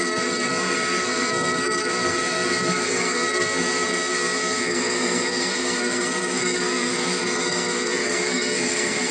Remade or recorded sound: remade